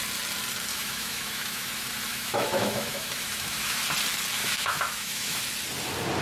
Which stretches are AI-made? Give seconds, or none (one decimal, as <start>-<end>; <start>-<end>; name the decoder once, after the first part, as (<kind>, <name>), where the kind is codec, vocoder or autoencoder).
0.7-1.7 (autoencoder, DAC-VAE); 2.1-3.8; 4.4-5.4

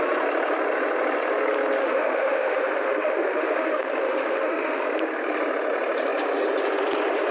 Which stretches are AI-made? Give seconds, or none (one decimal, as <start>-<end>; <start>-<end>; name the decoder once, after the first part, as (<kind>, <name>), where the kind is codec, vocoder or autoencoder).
1.8-4.8 (autoencoder, DAC-VAE)

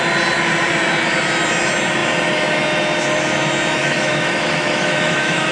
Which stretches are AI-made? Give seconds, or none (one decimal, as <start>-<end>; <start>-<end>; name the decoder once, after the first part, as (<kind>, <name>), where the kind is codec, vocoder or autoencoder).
3.8-5.5 (autoencoder, DAC-VAE)

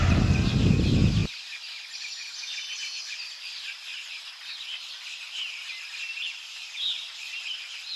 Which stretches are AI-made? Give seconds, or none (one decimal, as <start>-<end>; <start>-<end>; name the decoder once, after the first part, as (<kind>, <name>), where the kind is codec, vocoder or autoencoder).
none

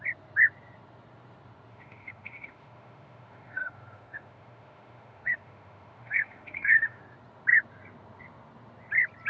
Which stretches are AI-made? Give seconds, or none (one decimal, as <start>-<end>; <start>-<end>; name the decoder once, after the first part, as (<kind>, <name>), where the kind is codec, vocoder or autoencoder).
1.7-7.0 (autoencoder, DAC-VAE)

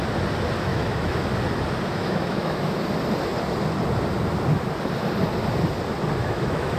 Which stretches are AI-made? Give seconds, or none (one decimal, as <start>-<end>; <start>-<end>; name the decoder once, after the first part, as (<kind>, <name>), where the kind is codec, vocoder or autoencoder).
0.7-1.4 (autoencoder, DAC-VAE); 1.9-2.8; 6.2-6.8